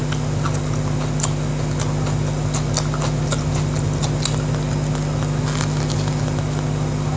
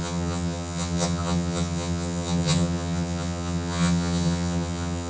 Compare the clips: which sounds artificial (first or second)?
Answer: second